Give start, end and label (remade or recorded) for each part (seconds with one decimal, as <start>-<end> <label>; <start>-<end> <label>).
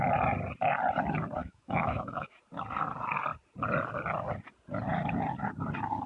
0.0-1.4 recorded; 1.4-2.4 remade; 2.4-6.1 recorded